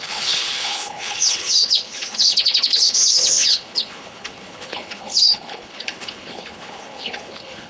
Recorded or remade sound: remade